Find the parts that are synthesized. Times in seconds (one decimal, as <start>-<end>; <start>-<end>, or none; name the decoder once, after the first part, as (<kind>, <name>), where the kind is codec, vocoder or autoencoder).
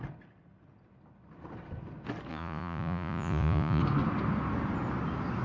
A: 2.3-3.8 (vocoder, Vocos)